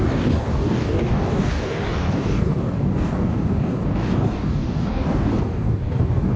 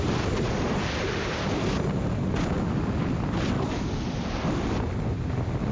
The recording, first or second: second